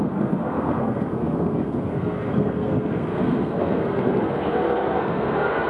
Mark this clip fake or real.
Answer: fake